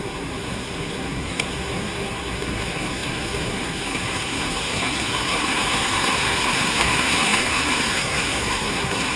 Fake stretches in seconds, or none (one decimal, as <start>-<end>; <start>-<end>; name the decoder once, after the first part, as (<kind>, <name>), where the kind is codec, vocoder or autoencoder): 0.0-9.2 (codec, SNAC)

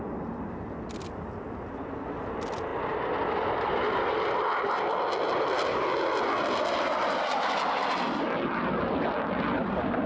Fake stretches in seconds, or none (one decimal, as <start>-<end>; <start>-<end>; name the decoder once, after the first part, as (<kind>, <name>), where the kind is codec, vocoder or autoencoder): none

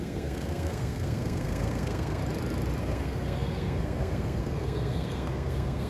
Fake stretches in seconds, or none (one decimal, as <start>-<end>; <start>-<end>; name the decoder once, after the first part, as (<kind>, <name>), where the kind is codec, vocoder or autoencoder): 0.0-2.2 (codec, SNAC); 2.8-5.9

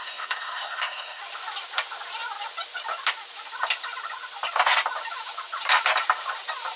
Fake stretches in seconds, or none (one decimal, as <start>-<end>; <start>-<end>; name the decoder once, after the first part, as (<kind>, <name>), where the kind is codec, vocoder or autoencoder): 0.0-1.2 (codec, SNAC)

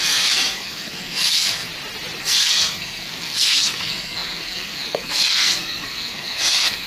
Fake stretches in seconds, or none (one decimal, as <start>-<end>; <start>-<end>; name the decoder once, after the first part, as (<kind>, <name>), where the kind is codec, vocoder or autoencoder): 0.0-1.7 (codec, SNAC); 2.2-6.9